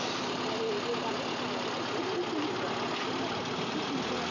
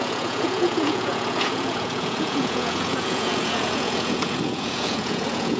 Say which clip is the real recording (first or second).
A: first